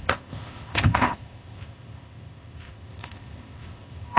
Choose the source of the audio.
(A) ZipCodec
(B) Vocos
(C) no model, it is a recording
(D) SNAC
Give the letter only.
A